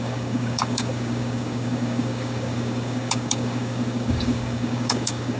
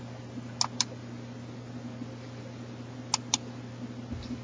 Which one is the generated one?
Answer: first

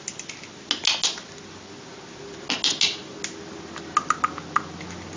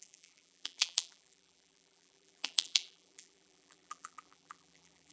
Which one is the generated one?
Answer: second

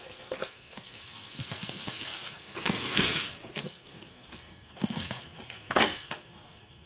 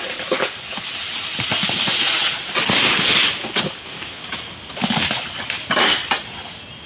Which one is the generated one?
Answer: first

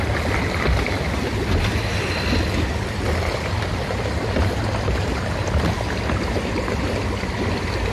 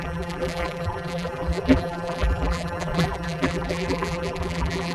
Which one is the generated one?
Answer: second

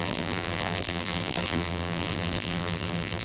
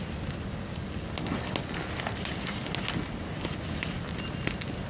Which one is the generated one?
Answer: first